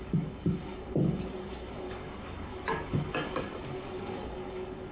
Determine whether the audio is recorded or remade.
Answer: remade